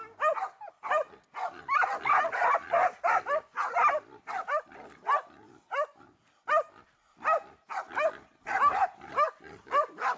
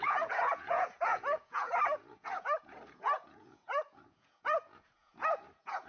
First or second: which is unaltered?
first